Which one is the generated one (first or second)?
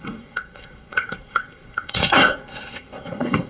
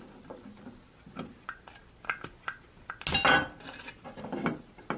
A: first